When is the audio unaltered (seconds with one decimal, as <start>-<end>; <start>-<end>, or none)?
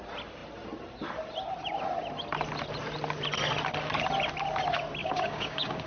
0.0-5.0